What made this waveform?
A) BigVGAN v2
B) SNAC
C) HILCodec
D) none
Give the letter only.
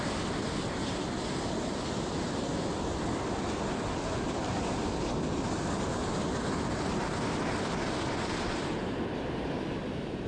D